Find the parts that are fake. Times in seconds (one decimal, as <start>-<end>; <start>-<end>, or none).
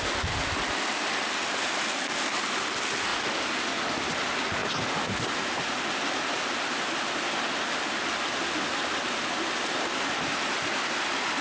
none